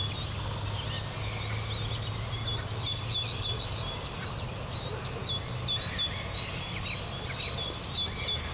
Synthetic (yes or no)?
no